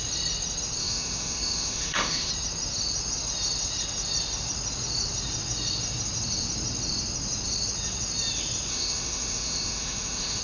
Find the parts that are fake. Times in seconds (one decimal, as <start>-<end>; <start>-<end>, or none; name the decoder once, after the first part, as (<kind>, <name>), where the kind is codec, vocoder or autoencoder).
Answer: 0.8-2.3 (autoencoder, DAC-VAE); 8.7-10.4